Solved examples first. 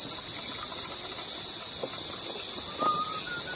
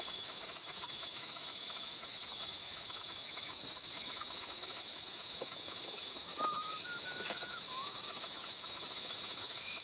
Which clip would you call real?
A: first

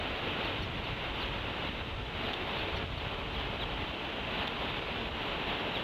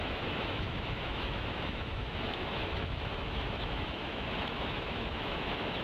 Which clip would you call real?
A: first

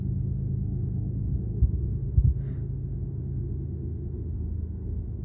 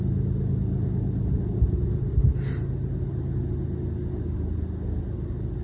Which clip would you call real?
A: second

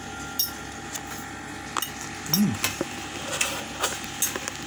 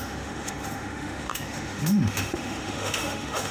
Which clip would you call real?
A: first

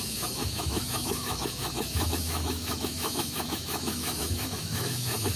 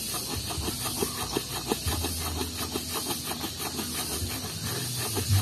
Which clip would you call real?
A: second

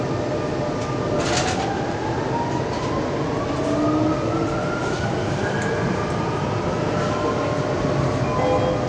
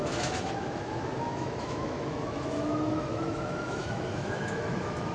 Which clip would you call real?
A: first